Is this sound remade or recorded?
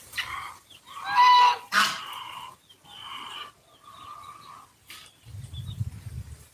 recorded